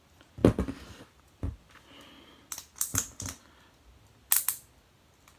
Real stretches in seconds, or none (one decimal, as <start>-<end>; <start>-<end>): 0.0-5.4